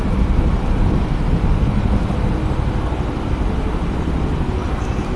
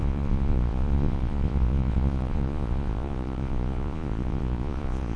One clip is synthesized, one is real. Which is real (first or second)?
first